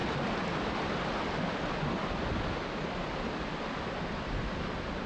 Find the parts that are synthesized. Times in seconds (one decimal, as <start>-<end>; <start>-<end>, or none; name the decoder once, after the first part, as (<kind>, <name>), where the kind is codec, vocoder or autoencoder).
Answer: none